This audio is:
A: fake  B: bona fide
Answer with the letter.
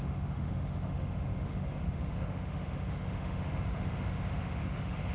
A